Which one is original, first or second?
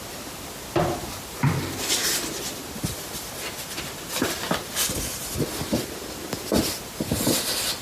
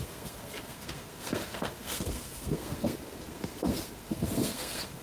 first